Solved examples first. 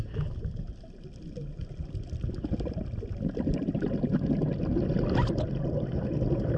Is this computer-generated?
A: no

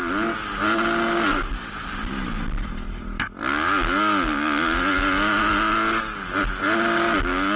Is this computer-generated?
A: no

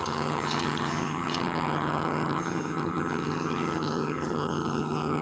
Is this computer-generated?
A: yes